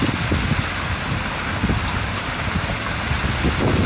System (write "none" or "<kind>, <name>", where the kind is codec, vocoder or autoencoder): none